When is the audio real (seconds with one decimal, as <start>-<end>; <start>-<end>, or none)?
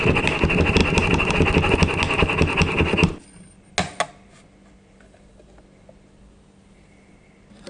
0.0-7.7